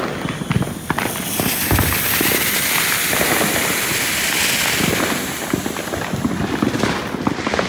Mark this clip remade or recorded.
recorded